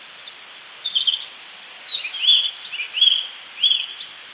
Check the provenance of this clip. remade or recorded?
recorded